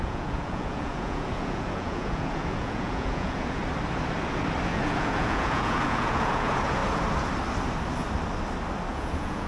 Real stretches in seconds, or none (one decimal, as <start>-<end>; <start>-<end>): 3.6-4.7; 6.8-8.9